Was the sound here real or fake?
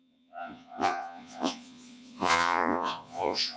fake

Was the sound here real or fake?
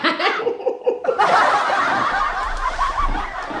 real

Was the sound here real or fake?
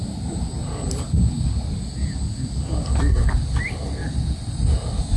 real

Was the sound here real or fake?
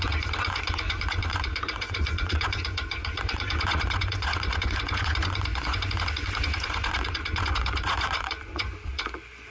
fake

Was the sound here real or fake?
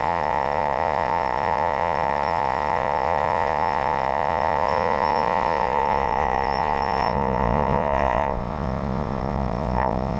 fake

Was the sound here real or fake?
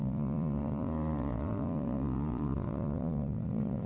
fake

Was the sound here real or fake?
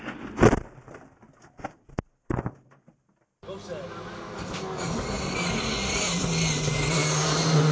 real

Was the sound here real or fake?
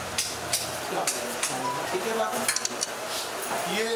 real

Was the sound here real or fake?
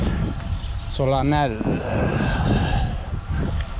real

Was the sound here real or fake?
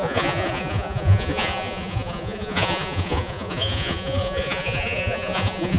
fake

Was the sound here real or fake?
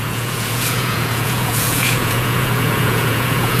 fake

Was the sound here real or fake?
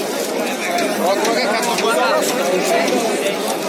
real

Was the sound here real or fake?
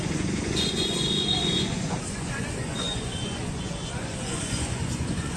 fake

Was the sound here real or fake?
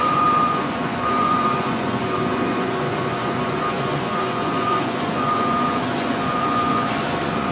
fake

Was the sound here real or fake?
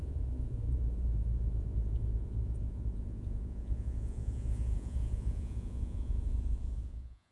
fake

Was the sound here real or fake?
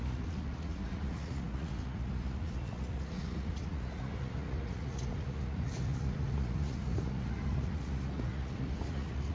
fake